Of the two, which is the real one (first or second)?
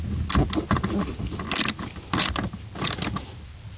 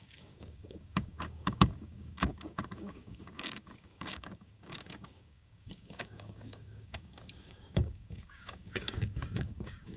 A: first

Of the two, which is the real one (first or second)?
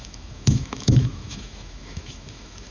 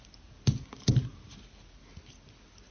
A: second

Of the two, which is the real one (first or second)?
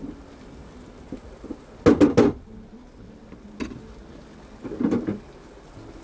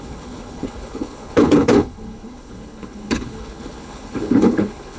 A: first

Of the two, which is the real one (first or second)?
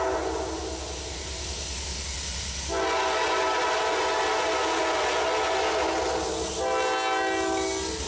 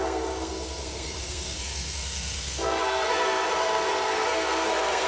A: first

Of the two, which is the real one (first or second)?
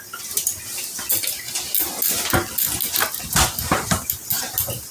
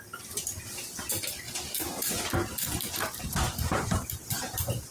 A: first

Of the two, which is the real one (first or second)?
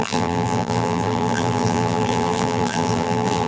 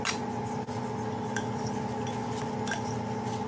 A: second